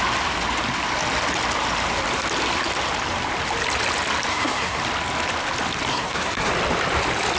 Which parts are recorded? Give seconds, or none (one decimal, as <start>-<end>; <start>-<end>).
0.0-4.3; 4.8-5.9; 6.5-7.4